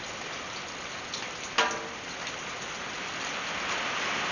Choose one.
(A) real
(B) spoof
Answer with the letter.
A